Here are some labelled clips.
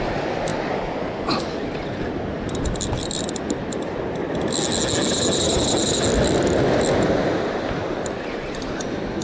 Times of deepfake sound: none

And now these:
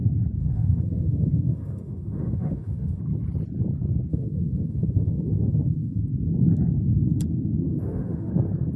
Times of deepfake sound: 0.4-3.0 (autoencoder, DAC-VAE); 4.1-6.0; 7.7-8.3

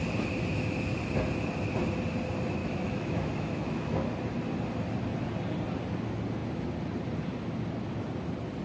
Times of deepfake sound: 2.6-4.1 (autoencoder, DAC-VAE)

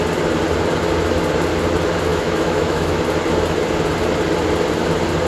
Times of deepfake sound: 2.1-3.0 (autoencoder, DAC-VAE)

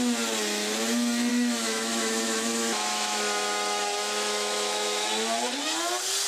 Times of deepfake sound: 1.3-5.1 (autoencoder, DAC-VAE)

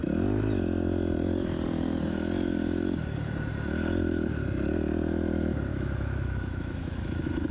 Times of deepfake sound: 5.7-7.5 (autoencoder, DAC-VAE)